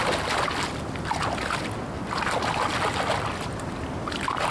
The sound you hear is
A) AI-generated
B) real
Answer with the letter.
B